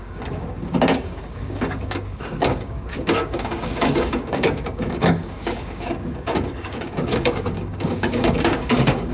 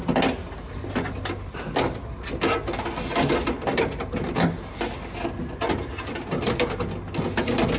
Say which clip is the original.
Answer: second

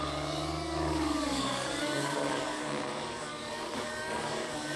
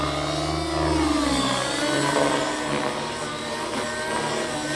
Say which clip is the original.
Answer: second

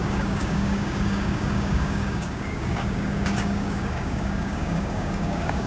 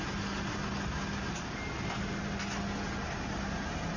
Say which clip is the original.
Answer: second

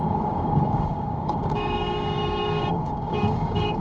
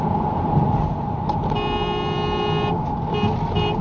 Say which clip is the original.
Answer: second